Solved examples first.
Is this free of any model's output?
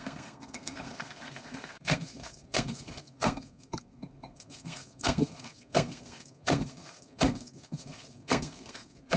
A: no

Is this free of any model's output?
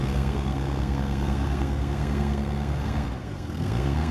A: no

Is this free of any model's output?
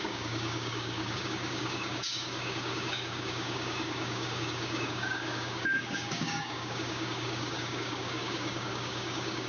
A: no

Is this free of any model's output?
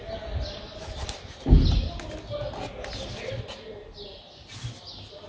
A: yes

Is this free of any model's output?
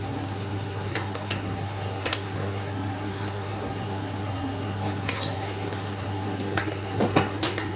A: no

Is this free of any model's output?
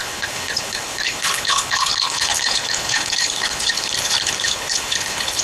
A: no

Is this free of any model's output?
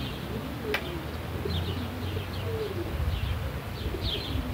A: yes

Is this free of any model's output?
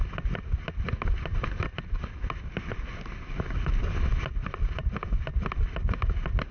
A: yes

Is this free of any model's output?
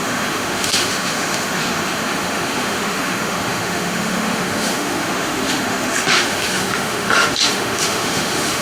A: no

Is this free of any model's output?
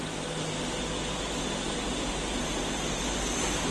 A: yes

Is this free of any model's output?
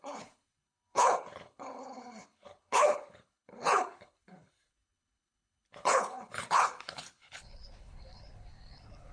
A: no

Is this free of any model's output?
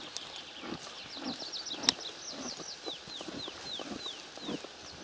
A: yes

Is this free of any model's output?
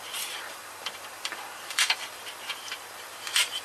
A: no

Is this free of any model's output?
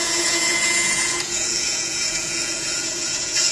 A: no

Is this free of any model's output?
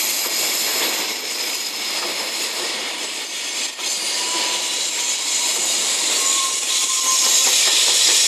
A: no